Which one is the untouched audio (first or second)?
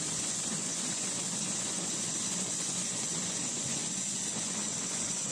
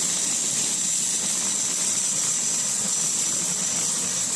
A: second